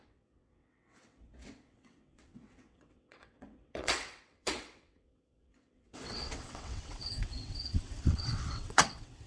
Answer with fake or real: fake